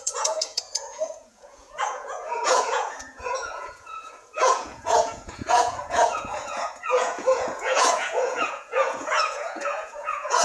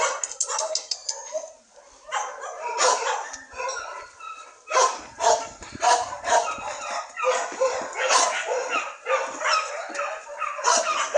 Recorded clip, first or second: second